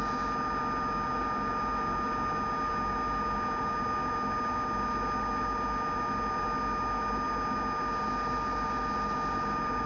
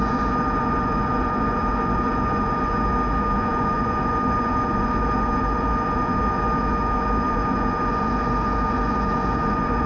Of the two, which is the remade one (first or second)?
second